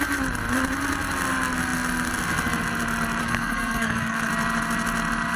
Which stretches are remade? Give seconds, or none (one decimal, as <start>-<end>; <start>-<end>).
3.2-4.3